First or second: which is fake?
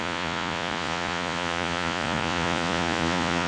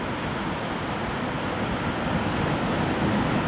first